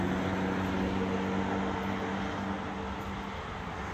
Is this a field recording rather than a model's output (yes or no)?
yes